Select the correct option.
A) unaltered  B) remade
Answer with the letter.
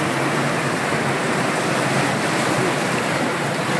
B